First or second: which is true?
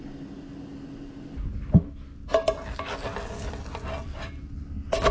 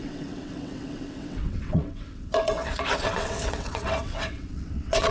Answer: first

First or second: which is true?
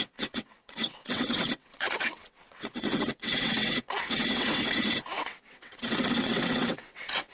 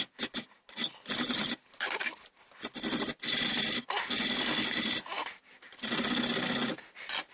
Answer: second